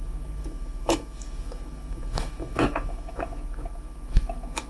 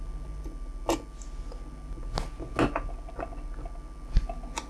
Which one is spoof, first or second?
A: first